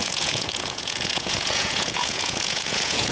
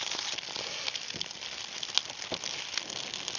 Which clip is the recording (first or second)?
second